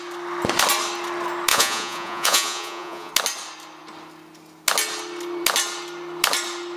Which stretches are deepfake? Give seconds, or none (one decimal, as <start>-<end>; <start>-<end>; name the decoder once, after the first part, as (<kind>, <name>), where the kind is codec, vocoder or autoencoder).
1.5-3.1 (vocoder, Vocos)